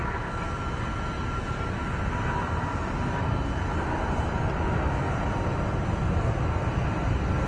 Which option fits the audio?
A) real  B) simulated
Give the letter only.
A